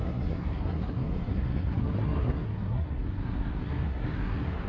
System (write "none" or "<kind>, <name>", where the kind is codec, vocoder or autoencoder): codec, SNAC